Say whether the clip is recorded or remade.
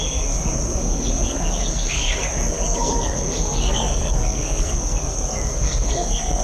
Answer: remade